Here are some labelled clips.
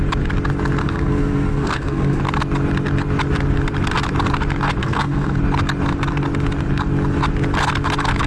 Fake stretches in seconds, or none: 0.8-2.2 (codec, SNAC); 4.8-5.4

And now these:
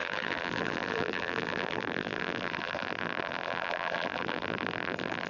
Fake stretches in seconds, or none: 0.0-5.3 (vocoder, BigVGAN v2)